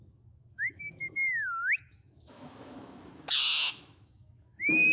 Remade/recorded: remade